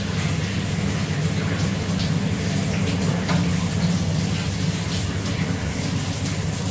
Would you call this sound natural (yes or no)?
yes